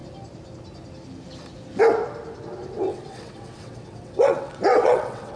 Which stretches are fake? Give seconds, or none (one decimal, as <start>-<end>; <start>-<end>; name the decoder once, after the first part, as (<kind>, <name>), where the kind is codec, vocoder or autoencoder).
2.9-5.4 (vocoder, WaveNeXt)